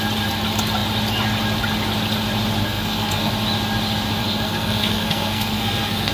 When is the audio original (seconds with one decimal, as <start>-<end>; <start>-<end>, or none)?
0.0-2.6; 3.3-4.2